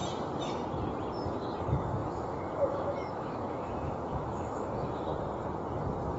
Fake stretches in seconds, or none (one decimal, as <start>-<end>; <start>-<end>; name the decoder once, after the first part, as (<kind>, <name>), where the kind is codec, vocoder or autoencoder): 1.6-5.1 (autoencoder, DAC-VAE)

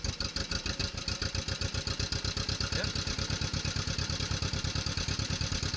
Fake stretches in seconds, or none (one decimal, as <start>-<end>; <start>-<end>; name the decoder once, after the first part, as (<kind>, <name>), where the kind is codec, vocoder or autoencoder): none

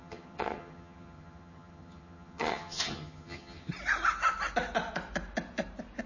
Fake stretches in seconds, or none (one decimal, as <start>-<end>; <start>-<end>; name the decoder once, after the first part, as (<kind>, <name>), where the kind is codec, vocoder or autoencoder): 0.0-3.7 (vocoder, HiFi-GAN)

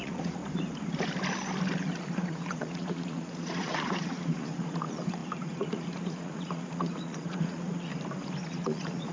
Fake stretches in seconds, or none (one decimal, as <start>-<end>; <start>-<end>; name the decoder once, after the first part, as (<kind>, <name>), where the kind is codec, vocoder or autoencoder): 0.0-0.4 (vocoder, Vocos); 2.1-7.9; 8.5-9.1